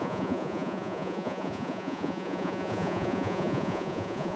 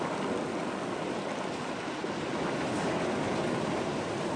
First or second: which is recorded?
second